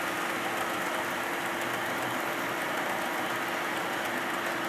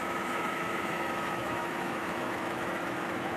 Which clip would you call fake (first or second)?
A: second